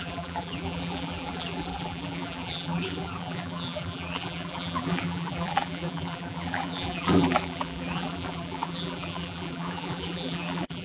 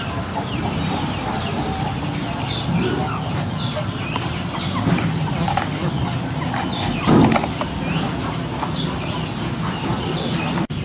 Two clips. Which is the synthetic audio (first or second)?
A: first